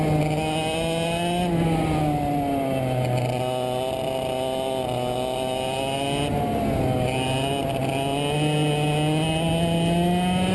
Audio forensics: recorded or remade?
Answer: recorded